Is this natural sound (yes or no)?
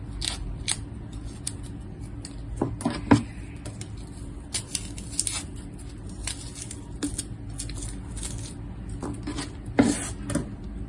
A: yes